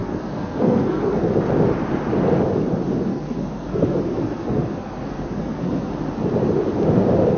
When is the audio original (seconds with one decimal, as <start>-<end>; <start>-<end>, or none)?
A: 1.3-3.1; 5.9-7.4